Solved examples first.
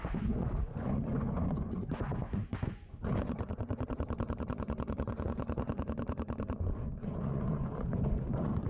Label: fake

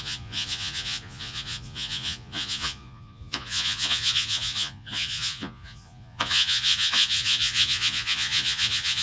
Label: fake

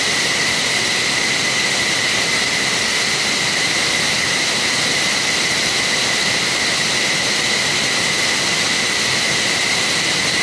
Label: real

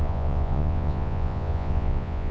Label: fake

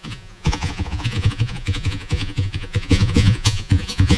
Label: fake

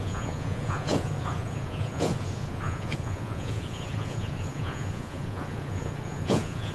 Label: fake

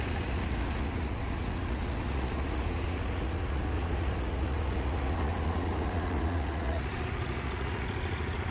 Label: fake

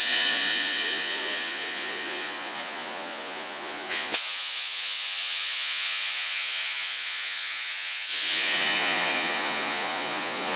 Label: fake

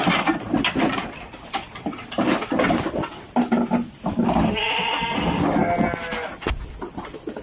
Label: real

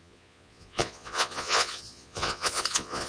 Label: fake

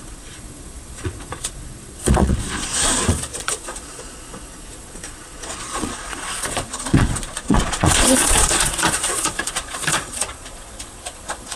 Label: fake